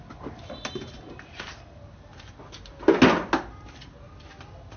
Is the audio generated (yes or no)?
no